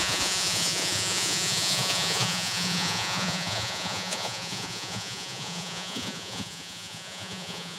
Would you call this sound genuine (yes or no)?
no